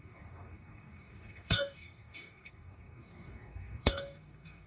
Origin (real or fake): fake